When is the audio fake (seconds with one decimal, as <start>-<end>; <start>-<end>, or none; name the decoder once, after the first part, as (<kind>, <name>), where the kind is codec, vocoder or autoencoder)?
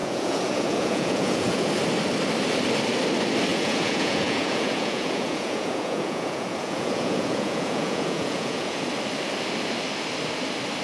0.0-1.7 (vocoder, Vocos); 3.5-8.8